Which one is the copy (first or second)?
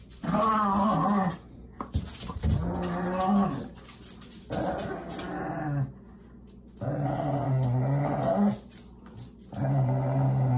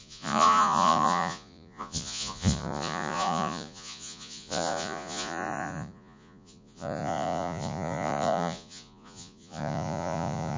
second